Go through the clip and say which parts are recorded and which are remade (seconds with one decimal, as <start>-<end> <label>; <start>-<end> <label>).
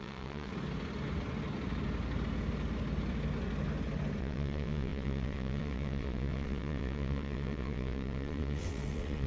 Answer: 0.0-0.5 remade; 0.5-4.2 recorded; 4.2-9.3 remade